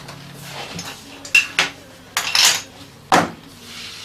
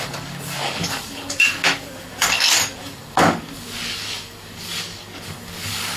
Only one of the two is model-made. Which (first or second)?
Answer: second